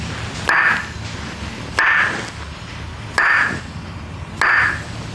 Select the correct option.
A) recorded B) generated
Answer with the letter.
A